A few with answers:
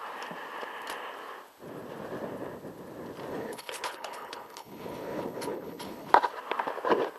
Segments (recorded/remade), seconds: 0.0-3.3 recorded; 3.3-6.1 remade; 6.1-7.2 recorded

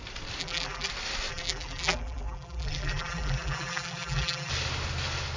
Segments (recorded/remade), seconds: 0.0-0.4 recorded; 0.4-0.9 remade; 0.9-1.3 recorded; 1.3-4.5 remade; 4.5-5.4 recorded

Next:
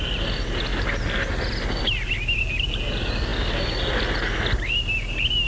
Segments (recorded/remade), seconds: 0.0-5.5 recorded

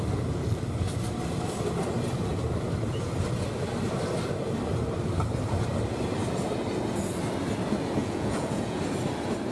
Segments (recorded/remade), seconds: 0.0-8.0 recorded; 8.0-8.8 remade; 8.8-9.5 recorded

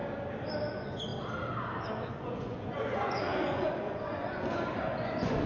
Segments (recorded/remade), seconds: 0.0-0.7 recorded; 0.7-1.1 remade; 1.1-2.1 recorded; 2.1-5.5 remade

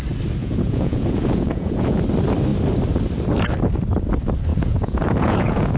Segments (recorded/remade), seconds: 0.0-0.4 recorded; 0.4-2.0 remade; 2.0-4.5 recorded; 4.5-5.8 remade

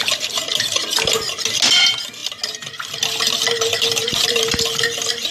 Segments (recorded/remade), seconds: 0.0-5.3 recorded